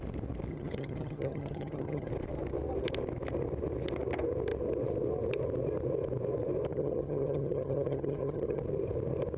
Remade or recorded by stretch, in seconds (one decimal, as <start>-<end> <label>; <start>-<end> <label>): 0.0-0.5 recorded; 0.5-2.1 remade; 2.1-6.7 recorded; 6.7-8.6 remade; 8.6-9.4 recorded